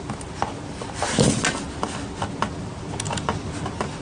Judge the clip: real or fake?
real